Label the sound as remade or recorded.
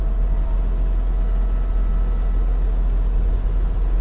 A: recorded